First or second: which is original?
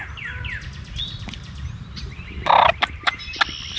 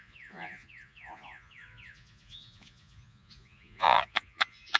first